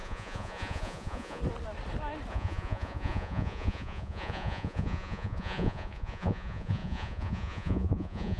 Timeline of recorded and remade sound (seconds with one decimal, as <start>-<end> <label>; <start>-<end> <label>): 0.0-1.4 remade; 1.4-2.3 recorded; 2.3-8.4 remade